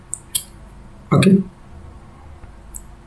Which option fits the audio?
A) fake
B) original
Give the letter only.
B